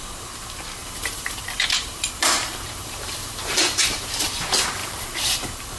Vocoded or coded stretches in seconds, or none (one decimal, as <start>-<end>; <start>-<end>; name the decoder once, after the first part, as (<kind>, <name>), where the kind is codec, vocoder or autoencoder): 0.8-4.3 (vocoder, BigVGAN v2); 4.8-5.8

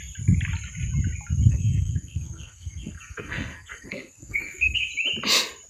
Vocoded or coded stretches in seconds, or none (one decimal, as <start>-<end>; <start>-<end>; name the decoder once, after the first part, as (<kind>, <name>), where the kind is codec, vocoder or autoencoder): 1.5-4.9 (codec, SNAC)

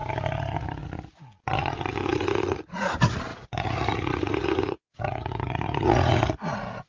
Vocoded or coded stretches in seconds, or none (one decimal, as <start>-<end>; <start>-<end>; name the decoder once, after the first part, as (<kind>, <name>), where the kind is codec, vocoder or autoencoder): 2.1-2.8 (vocoder, Vocos); 3.3-6.2